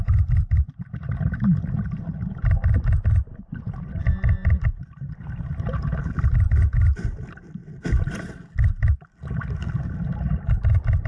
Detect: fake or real real